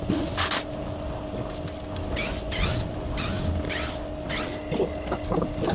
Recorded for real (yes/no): yes